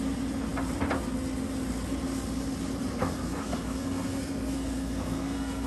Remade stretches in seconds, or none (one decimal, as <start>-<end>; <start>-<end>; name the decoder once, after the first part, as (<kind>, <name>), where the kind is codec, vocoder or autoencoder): 3.0-5.7 (codec, SNAC)